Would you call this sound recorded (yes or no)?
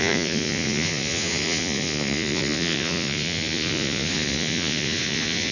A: no